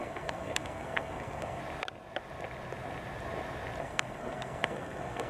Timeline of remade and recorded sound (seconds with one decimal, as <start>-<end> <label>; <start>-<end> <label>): 0.0-1.6 remade; 1.6-3.8 recorded; 3.8-5.3 remade